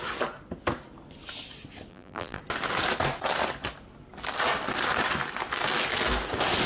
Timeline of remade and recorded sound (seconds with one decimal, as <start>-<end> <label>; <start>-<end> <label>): 0.0-1.9 recorded; 1.9-2.4 remade; 2.4-6.7 recorded